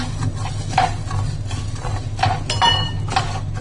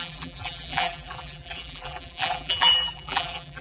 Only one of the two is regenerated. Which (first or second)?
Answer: second